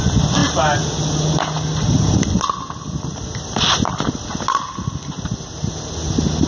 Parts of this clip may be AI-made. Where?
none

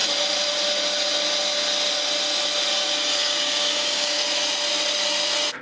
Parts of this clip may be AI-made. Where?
3.2-4.2 (codec, DAC)

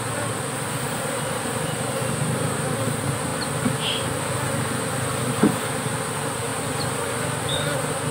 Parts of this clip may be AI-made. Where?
none

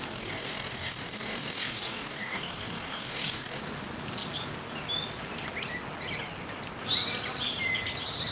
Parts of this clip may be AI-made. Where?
0.0-3.6 (codec, DAC)